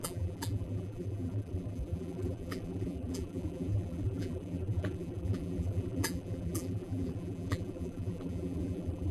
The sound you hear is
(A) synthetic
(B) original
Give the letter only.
A